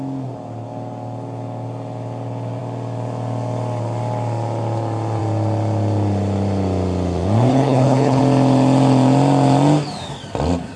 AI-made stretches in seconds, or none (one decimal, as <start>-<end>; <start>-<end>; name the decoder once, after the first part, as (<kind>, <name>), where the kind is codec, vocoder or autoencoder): 7.5-8.2 (codec, HILCodec)